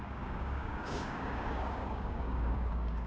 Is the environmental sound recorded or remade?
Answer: remade